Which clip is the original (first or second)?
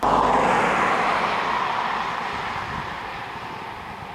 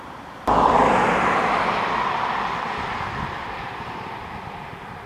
first